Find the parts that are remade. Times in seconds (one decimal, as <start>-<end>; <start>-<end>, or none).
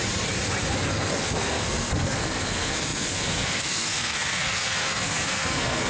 0.9-5.9